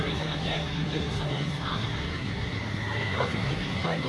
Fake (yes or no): yes